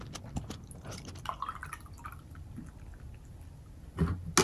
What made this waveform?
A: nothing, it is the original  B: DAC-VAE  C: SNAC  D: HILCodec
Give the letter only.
A